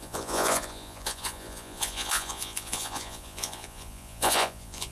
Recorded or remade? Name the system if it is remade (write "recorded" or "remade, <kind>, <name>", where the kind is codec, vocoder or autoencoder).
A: remade, vocoder, Vocos